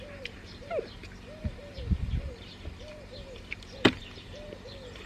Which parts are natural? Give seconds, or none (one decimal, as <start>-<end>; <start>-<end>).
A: none